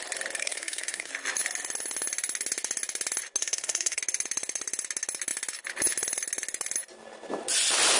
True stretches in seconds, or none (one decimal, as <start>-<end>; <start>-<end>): 0.0-0.4; 1.1-3.4; 4.0-8.0